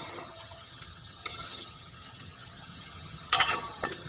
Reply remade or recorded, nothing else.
remade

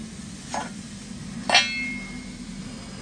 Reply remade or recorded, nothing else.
recorded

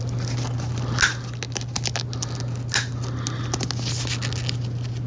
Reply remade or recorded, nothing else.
recorded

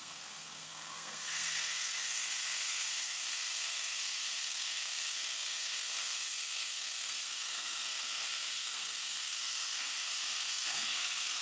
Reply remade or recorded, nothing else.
remade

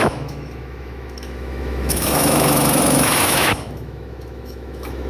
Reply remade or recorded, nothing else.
remade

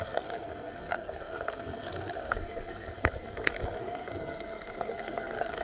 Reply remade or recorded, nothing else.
remade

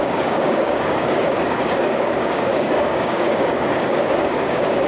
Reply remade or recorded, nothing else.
remade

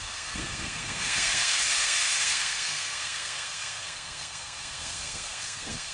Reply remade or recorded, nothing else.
remade